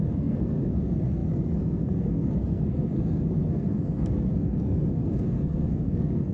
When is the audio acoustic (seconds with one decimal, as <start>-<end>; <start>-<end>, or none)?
none

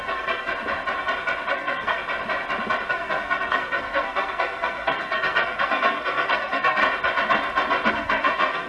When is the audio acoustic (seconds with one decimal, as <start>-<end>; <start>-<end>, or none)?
0.5-1.5; 2.0-2.9; 6.8-7.9

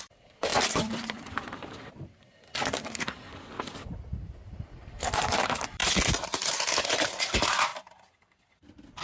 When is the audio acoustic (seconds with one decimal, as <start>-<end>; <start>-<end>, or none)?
7.7-8.5

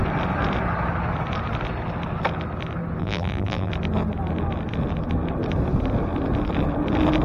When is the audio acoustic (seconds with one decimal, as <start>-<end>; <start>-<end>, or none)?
0.0-3.0; 3.7-7.2

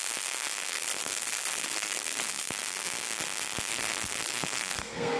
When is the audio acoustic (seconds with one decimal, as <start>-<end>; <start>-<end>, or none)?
0.0-0.7; 2.4-3.7

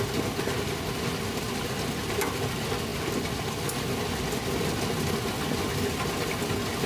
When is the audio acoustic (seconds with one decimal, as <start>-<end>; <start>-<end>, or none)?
0.0-6.9

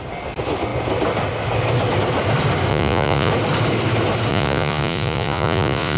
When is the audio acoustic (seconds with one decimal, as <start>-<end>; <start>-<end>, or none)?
0.0-2.7; 3.3-4.3